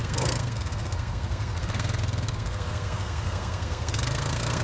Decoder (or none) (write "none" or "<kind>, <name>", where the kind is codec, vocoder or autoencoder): codec, SNAC